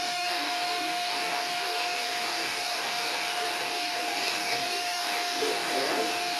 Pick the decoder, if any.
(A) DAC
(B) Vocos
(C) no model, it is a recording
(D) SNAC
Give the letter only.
A